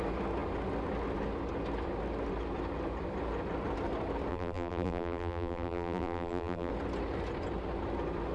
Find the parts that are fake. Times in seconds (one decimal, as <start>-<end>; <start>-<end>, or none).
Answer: 4.3-6.7